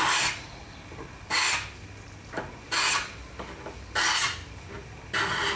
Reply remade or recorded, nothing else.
recorded